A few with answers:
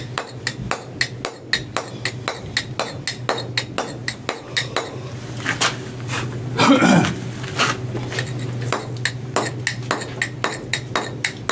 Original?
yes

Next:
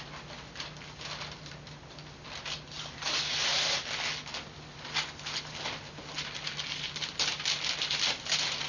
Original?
yes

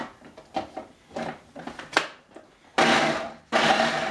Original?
yes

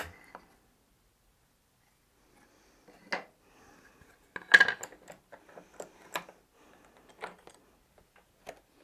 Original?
yes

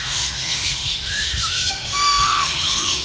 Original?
no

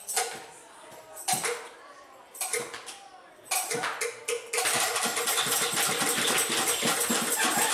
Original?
yes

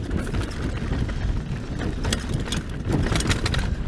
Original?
yes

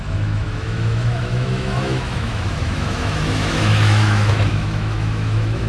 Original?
no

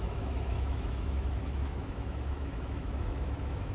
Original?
no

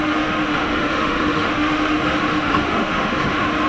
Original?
no